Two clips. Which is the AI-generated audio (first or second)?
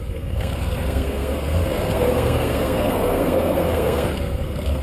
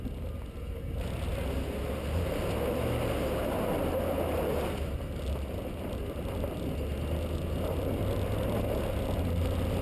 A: first